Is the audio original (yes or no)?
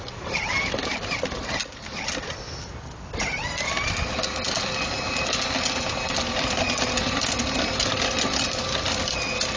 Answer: yes